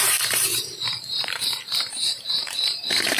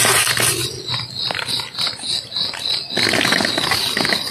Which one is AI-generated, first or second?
first